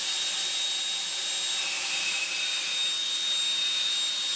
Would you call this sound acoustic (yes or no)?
yes